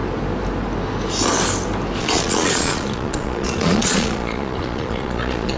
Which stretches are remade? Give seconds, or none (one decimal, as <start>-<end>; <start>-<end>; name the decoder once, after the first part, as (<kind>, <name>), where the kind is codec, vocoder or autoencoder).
2.0-5.6 (vocoder, Vocos)